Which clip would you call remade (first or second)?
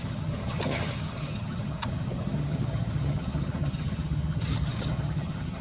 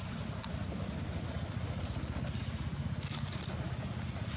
first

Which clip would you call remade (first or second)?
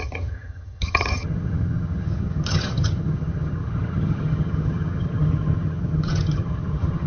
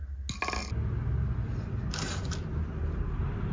first